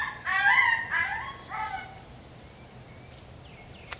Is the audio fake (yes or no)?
no